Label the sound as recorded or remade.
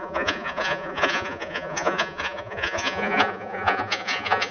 remade